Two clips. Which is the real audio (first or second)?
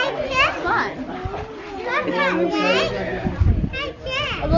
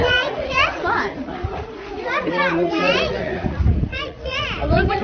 first